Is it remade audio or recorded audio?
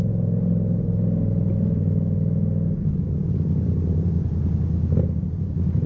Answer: recorded